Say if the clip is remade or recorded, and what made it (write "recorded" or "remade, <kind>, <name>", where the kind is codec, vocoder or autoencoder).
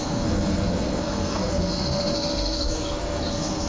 remade, codec, SNAC